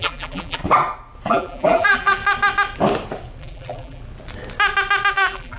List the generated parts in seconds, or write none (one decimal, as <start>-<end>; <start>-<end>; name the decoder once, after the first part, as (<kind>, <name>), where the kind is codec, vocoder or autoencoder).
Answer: 0.0-0.6 (vocoder, BigVGAN v2); 1.3-2.2; 3.4-4.0; 5.1-5.6